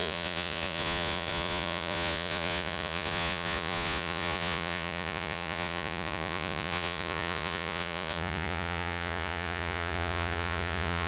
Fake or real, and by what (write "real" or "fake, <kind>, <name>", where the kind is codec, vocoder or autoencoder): fake, vocoder, Vocos